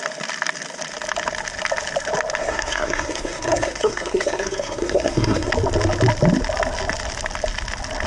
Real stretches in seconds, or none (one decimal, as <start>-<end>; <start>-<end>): 0.0-2.4; 5.5-8.1